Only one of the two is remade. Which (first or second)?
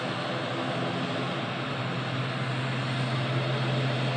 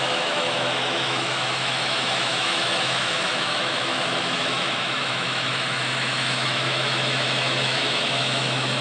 second